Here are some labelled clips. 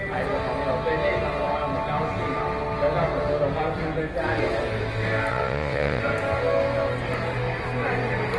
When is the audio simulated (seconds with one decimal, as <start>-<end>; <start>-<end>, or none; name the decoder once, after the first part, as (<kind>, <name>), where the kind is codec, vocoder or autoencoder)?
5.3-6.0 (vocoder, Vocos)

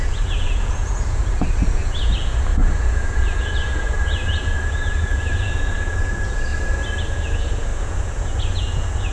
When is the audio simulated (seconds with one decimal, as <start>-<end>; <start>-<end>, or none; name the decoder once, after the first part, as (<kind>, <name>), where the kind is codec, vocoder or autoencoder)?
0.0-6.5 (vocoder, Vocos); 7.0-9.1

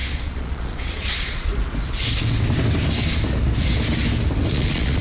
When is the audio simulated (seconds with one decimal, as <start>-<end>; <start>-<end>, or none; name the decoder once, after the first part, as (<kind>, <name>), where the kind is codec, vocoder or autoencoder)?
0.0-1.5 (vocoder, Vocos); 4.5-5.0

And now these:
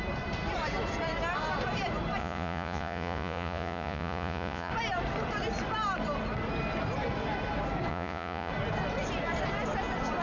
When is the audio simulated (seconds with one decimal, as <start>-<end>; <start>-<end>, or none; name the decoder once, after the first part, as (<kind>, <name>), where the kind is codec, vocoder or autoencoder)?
2.2-4.7 (vocoder, Vocos); 7.9-8.5

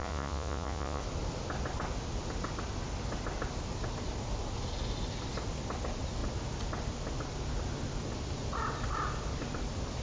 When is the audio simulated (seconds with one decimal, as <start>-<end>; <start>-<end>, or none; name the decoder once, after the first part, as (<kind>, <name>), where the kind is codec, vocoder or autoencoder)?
0.0-1.0 (vocoder, Vocos)

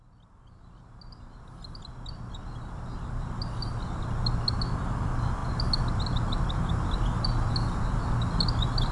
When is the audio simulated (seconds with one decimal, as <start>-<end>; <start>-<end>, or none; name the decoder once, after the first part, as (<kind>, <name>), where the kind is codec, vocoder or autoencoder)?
none

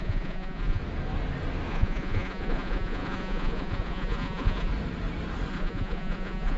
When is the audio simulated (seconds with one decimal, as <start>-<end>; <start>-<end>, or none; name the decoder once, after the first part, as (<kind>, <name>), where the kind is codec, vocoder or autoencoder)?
0.0-0.8 (vocoder, Vocos); 1.7-4.7; 5.5-6.6

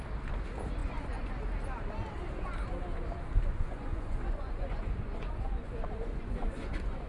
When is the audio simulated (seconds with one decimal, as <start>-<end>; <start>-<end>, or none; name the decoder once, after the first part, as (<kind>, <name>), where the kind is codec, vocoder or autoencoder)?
0.8-1.3 (vocoder, Vocos); 3.5-7.1